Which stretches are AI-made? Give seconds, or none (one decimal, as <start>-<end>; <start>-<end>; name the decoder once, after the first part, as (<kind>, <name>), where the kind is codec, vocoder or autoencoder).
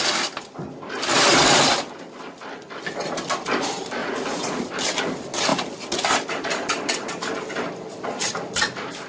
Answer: 4.0-4.6 (vocoder, Vocos)